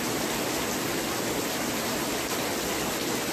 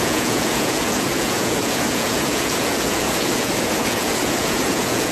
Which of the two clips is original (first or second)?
first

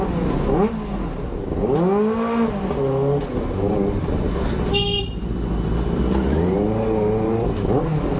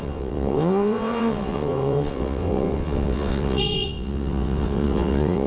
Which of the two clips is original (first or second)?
first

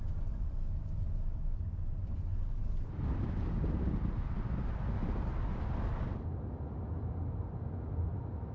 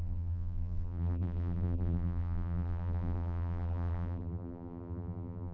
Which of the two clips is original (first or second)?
first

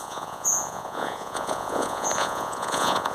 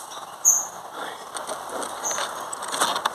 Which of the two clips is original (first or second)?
second